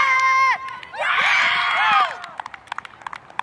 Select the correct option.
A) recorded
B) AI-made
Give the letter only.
A